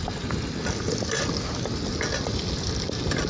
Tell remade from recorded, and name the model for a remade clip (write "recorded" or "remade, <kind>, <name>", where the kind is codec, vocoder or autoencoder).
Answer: recorded